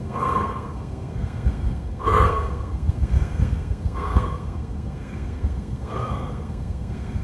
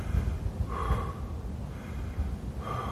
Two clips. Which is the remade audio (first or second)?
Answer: first